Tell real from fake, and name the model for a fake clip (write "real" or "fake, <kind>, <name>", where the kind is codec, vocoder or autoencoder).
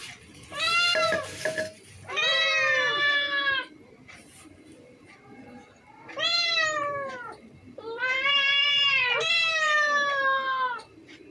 fake, vocoder, BigVGAN v2